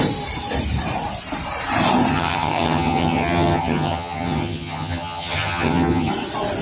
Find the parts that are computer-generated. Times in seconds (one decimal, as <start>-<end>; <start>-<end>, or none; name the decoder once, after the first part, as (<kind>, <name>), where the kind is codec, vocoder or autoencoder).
2.1-6.1 (vocoder, HiFi-GAN)